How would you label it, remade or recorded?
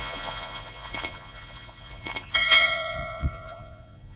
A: remade